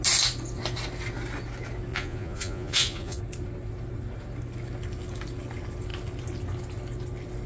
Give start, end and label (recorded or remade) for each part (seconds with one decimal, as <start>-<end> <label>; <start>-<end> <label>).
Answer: 0.0-1.9 recorded; 1.9-3.2 remade; 3.2-7.5 recorded